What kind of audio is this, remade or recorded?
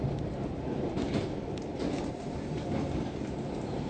remade